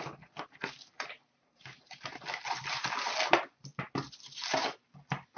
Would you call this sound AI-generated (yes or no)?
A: no